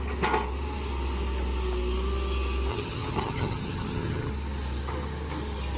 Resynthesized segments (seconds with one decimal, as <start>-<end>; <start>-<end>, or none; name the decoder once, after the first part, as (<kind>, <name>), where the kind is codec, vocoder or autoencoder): 2.7-4.3 (vocoder, HiFi-GAN)